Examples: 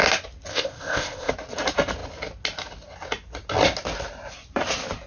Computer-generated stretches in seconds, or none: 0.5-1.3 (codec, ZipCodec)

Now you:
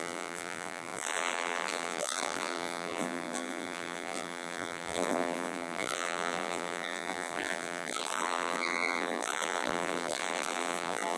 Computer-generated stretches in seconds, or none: 0.0-11.2 (vocoder, BigVGAN v2)